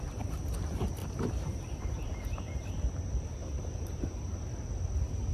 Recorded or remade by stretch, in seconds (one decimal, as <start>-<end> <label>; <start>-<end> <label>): 0.0-1.0 recorded; 1.0-2.7 remade; 2.7-3.4 recorded; 3.4-4.4 remade; 4.4-5.3 recorded